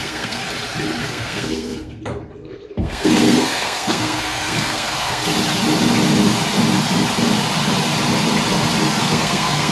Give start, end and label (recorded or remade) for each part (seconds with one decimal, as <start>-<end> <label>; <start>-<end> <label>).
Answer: 0.0-0.4 remade; 0.4-1.0 recorded; 1.0-5.2 remade; 5.2-9.0 recorded; 9.0-9.7 remade